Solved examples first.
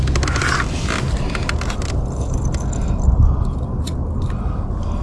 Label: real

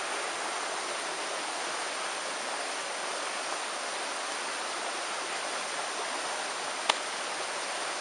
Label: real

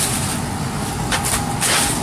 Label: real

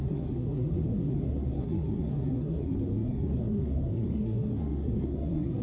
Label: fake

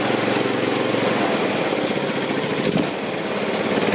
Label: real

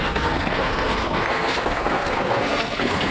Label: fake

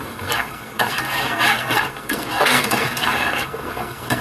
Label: fake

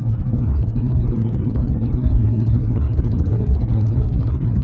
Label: fake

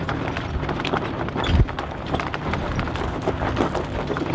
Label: real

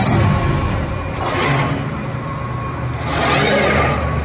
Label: real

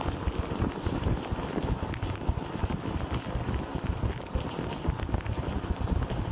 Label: real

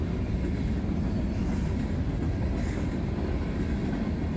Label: real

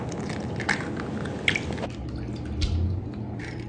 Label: real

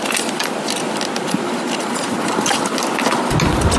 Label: real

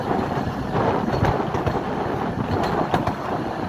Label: real